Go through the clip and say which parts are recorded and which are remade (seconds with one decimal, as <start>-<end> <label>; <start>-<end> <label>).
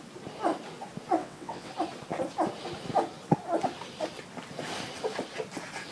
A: 0.0-1.2 recorded; 1.2-1.7 remade; 1.7-5.9 recorded